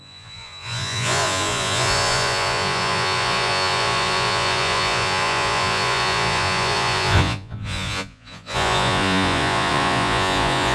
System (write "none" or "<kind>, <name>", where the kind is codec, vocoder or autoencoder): vocoder, Vocos